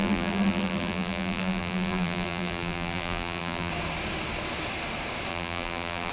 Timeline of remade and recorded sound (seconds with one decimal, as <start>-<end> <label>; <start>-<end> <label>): 0.0-3.7 remade; 3.7-5.3 recorded; 5.3-6.1 remade